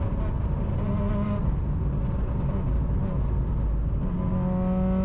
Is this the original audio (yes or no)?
yes